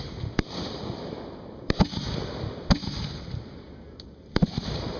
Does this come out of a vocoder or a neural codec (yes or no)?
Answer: no